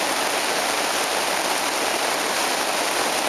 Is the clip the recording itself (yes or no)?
yes